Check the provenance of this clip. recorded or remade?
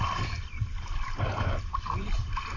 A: recorded